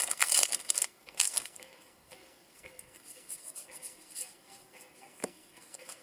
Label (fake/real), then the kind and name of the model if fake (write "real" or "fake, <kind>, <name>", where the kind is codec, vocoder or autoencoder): fake, codec, SNAC